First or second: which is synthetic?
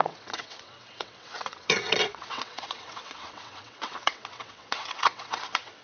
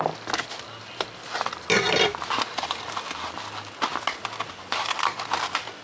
first